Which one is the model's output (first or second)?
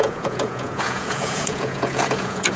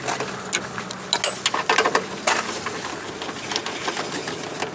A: first